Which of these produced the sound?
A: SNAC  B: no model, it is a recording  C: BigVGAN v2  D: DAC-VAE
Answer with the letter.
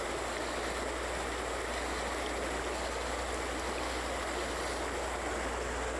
B